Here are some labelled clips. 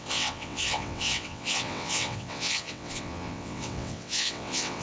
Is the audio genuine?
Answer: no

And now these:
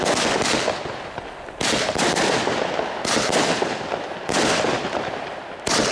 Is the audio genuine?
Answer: yes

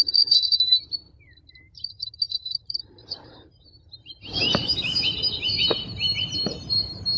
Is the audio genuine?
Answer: no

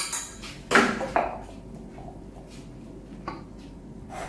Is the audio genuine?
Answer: yes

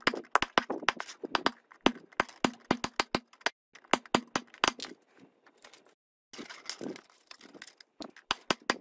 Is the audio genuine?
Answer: yes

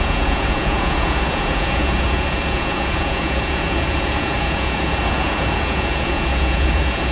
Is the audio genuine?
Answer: no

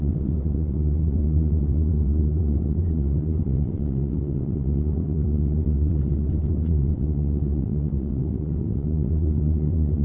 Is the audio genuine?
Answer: no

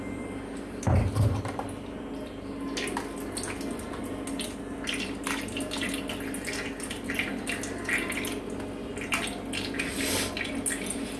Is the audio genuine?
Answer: yes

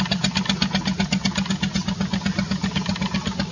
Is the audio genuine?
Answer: yes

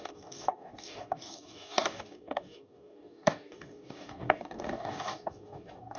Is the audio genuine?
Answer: no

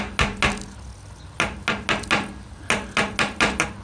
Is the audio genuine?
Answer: yes